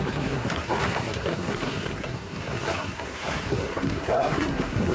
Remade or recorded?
remade